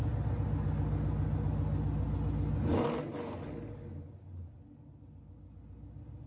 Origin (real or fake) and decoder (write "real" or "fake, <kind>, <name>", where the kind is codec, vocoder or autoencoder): real